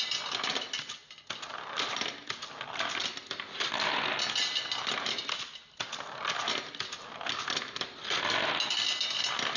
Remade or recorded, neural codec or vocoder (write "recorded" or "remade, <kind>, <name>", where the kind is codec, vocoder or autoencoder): recorded